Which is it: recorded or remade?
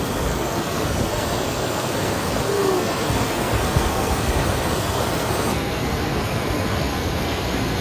remade